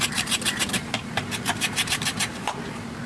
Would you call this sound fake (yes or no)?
yes